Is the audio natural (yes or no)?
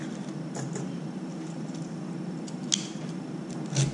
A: yes